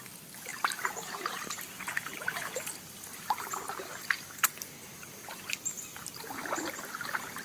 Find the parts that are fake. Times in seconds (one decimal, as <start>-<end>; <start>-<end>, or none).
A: none